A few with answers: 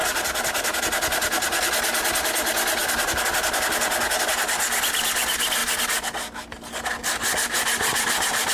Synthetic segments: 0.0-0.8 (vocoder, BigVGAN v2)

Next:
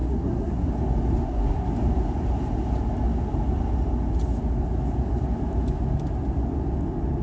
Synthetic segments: 0.0-0.7 (codec, SNAC); 1.2-1.7

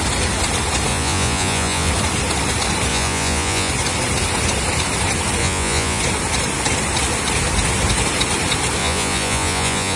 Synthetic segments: 0.9-1.9 (vocoder, Vocos); 2.9-3.7; 5.4-6.0; 8.8-10.0